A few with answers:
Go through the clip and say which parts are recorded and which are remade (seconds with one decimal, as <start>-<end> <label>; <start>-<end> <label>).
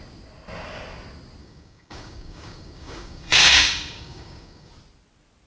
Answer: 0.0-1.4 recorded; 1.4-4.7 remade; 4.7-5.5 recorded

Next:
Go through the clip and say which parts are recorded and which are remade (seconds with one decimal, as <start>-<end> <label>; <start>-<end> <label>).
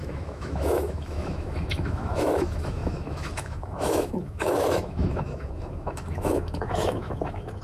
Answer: 0.0-7.6 remade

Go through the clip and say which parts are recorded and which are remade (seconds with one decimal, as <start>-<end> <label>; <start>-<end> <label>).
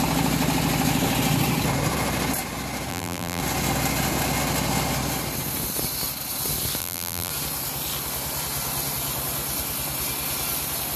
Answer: 0.0-2.9 recorded; 2.9-3.4 remade; 3.4-6.8 recorded; 6.8-7.3 remade; 7.3-11.0 recorded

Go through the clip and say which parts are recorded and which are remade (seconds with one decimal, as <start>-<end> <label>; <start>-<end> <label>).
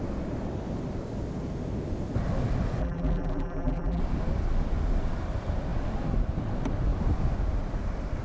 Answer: 0.0-2.8 recorded; 2.8-4.0 remade; 4.0-8.2 recorded